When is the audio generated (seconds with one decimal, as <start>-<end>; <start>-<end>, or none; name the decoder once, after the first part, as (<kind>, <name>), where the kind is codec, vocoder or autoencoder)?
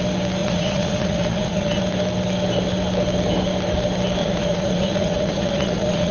0.4-1.8 (vocoder, Vocos); 4.2-6.1